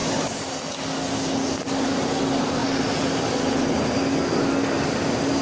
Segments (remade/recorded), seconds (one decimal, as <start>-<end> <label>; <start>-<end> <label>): 0.0-5.4 recorded